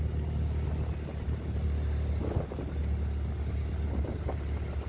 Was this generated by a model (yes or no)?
no